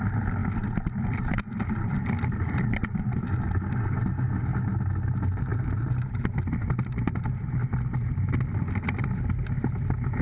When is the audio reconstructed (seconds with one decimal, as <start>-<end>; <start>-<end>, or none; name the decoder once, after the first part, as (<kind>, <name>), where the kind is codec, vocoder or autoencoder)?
none